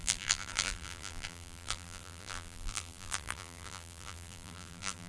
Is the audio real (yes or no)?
no